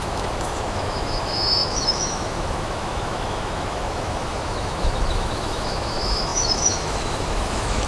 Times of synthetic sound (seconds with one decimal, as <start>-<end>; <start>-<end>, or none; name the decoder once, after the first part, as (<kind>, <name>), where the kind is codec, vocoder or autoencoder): 0.0-7.9 (autoencoder, DAC-VAE)